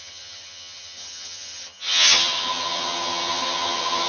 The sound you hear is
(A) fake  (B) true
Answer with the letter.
A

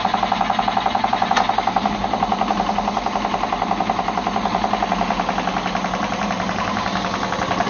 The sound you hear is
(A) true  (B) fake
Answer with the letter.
A